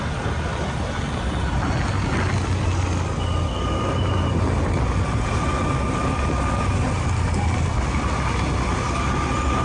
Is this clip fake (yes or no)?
no